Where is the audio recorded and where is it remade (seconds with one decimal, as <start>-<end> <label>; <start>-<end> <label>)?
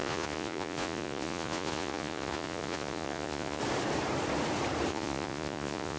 0.0-3.6 remade; 3.6-4.9 recorded; 4.9-6.0 remade